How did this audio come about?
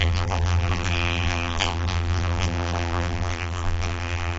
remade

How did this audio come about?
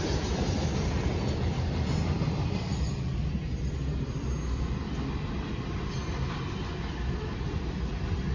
recorded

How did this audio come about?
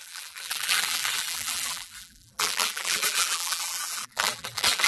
remade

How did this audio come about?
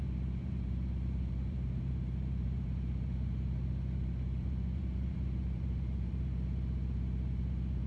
remade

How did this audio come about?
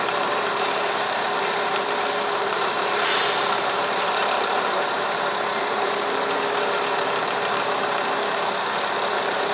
remade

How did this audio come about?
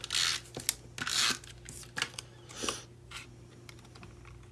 recorded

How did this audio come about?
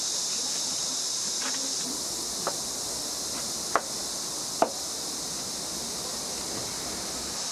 recorded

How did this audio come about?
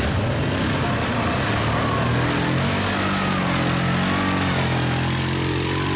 recorded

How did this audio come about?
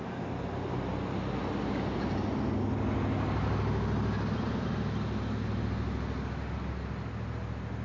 recorded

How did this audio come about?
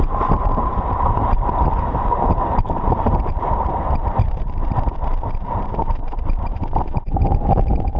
remade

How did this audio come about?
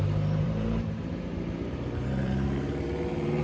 remade